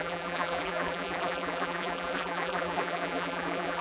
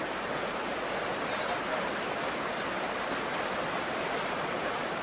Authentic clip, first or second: second